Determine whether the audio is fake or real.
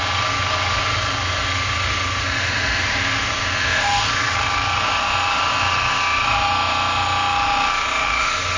fake